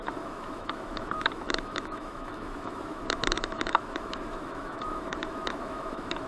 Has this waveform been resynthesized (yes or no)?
yes